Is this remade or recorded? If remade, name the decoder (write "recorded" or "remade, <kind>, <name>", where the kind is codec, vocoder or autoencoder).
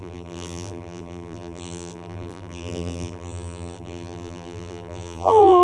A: remade, vocoder, BigVGAN v2